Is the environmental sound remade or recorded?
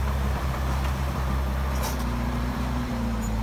remade